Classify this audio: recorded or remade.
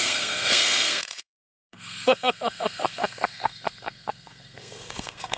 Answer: remade